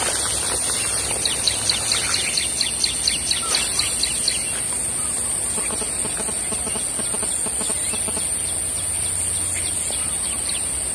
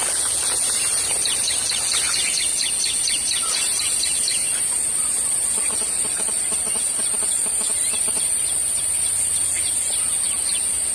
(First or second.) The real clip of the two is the first